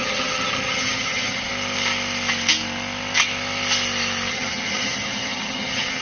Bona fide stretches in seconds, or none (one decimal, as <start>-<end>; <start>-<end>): 1.5-4.3